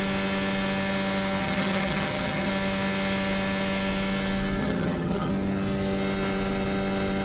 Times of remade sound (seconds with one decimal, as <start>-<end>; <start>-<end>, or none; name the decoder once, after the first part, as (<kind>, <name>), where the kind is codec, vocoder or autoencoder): 1.4-2.5 (vocoder, HiFi-GAN); 4.6-5.3